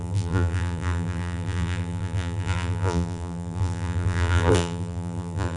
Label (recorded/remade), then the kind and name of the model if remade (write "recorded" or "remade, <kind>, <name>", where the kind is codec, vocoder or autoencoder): remade, vocoder, BigVGAN v2